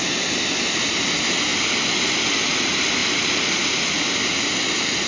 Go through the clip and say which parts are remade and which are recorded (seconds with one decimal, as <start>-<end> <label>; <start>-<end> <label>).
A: 0.0-5.1 recorded